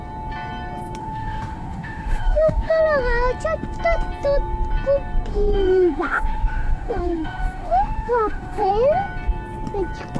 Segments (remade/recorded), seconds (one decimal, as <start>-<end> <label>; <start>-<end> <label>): 0.0-1.0 recorded; 1.0-2.8 remade; 2.8-5.3 recorded; 5.3-8.7 remade; 8.7-10.2 recorded

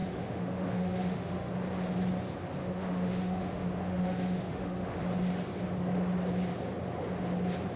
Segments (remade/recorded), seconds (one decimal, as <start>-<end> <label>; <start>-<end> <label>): 0.0-1.5 remade; 1.5-2.6 recorded; 2.6-5.0 remade; 5.0-7.8 recorded

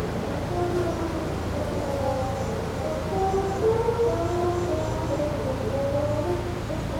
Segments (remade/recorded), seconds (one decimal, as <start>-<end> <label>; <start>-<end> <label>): 0.0-7.0 recorded

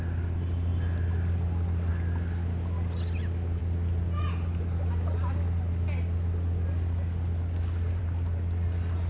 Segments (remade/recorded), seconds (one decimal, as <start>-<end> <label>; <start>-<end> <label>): 0.0-9.1 recorded

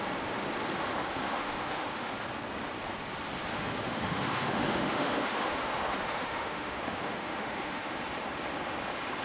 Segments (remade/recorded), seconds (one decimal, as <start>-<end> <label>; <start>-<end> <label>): 0.0-1.1 recorded; 1.1-2.1 remade; 2.1-3.5 recorded; 3.5-8.0 remade; 8.0-9.2 recorded